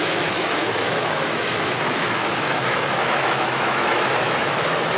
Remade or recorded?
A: remade